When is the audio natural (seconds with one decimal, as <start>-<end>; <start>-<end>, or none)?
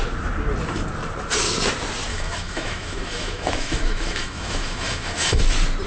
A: 0.0-2.1; 5.4-5.9